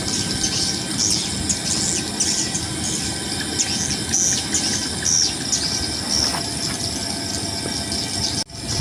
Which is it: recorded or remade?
recorded